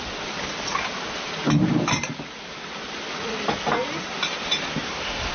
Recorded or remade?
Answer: recorded